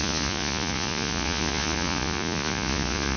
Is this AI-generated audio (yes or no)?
yes